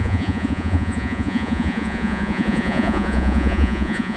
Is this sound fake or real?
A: fake